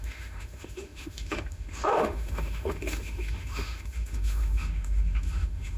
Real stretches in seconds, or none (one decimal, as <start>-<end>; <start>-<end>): none